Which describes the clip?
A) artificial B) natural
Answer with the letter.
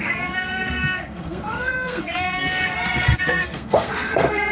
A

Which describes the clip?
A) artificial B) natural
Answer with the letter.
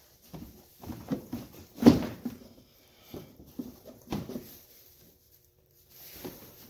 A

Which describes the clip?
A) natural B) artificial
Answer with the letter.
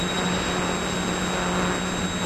A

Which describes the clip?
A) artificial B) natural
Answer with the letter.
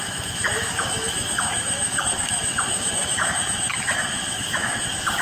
A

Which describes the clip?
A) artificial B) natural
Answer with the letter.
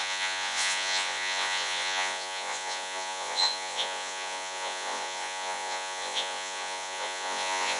A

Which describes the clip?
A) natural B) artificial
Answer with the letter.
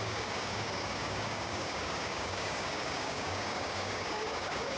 B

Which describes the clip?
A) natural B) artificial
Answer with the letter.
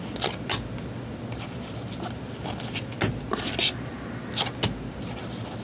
A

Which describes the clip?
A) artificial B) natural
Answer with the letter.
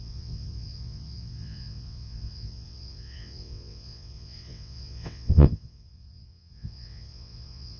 A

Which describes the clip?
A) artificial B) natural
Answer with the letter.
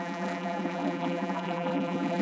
A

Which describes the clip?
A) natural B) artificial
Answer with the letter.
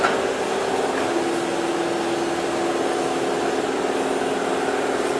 A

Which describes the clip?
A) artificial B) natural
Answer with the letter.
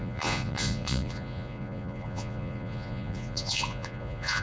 A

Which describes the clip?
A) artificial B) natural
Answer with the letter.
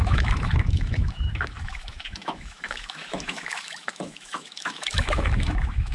A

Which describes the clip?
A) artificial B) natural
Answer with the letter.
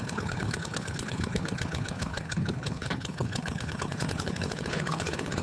A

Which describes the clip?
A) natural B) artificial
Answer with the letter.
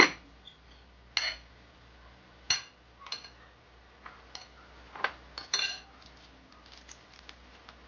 A